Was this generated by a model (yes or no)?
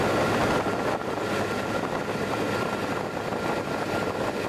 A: no